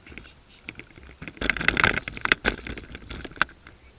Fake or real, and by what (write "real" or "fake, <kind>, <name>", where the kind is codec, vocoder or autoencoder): real